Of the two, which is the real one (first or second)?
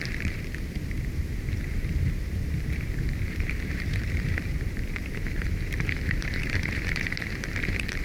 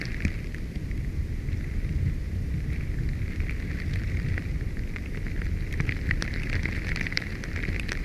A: second